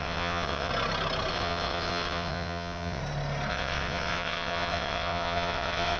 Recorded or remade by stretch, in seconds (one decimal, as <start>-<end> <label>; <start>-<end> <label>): 0.0-0.7 remade; 0.7-1.3 recorded; 1.3-3.0 remade; 3.0-3.5 recorded; 3.5-6.0 remade